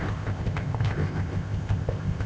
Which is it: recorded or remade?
remade